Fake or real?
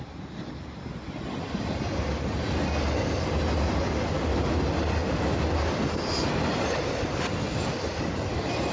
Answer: real